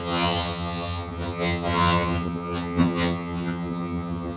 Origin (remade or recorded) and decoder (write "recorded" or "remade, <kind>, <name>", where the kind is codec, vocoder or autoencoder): remade, vocoder, HiFi-GAN